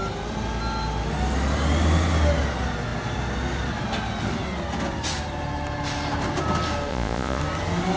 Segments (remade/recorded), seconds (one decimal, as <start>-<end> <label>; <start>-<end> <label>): 0.0-6.9 recorded; 6.9-7.4 remade; 7.4-8.0 recorded